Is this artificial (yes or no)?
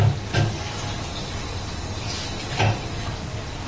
no